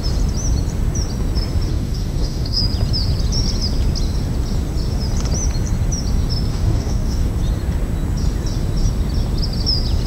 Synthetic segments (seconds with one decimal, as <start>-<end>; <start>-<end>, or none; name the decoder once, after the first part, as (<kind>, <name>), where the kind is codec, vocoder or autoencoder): 1.7-2.6 (codec, DAC); 6.5-7.3